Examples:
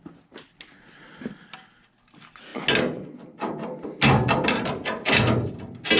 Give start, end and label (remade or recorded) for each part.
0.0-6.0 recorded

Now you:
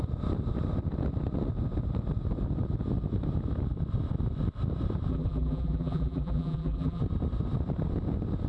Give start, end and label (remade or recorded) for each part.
0.0-5.1 recorded; 5.1-7.0 remade; 7.0-8.5 recorded

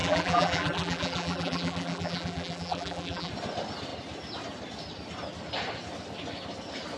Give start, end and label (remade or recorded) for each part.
0.0-3.3 remade; 3.3-7.0 recorded

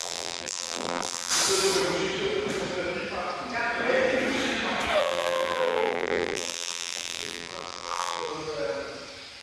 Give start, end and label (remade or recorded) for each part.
0.0-1.3 remade; 1.3-5.0 recorded; 5.0-8.3 remade; 8.3-9.4 recorded

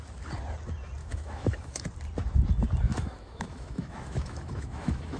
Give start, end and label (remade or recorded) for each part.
0.0-1.0 recorded; 1.0-1.8 remade; 1.8-2.9 recorded; 2.9-5.2 remade